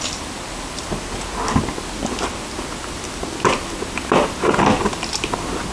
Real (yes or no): yes